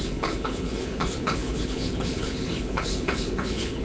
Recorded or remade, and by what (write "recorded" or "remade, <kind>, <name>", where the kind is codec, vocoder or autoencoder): remade, codec, HILCodec